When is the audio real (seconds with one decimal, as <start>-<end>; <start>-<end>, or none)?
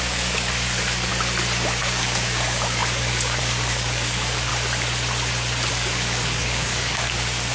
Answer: 1.1-1.8; 4.5-5.7